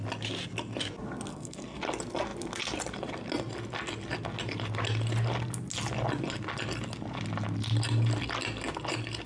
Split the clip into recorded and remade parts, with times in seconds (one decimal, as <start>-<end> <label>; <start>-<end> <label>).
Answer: 0.0-1.3 recorded; 1.3-1.8 remade; 1.8-9.3 recorded